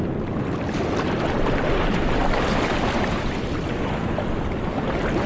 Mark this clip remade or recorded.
recorded